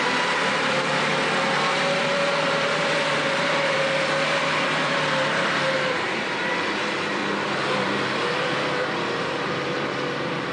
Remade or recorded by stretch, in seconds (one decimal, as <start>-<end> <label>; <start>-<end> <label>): 0.0-1.1 remade; 1.1-2.0 recorded; 2.0-7.2 remade; 7.2-7.8 recorded; 7.8-10.5 remade